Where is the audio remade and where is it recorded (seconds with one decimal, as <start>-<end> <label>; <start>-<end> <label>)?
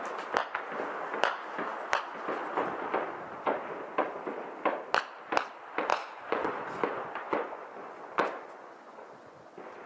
0.0-5.9 recorded; 5.9-9.5 remade; 9.5-9.9 recorded